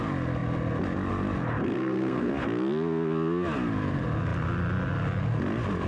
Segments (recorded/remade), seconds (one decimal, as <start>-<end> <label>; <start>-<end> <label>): 0.0-1.6 recorded; 1.6-2.3 remade; 2.3-5.9 recorded